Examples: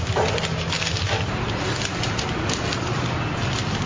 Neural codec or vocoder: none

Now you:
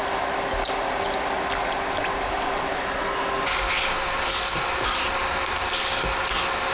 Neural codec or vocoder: none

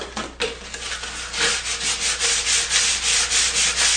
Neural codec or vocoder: none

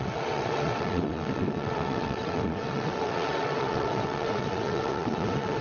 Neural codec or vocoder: vocoder, WaveNeXt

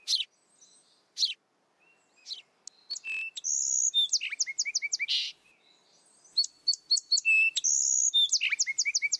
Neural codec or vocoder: none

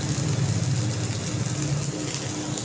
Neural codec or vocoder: none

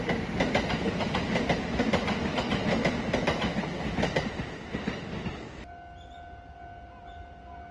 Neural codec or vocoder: none